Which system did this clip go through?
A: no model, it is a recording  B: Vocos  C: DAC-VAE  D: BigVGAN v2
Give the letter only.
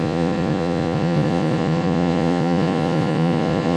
B